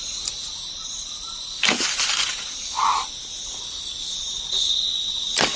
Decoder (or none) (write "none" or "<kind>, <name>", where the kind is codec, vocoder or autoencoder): none